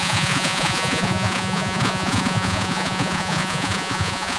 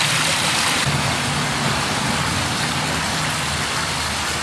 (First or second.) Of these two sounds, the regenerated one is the first